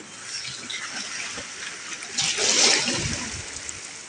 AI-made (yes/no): no